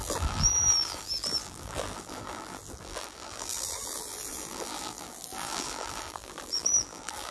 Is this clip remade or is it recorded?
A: remade